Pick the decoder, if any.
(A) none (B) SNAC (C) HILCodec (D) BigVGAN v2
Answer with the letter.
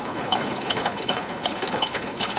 C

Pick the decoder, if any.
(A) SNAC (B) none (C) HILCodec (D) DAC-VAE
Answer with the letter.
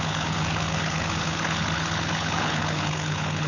C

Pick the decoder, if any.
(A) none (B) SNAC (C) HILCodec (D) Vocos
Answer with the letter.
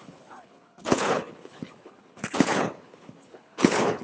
C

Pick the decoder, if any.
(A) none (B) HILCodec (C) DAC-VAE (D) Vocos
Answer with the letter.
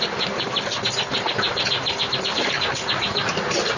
A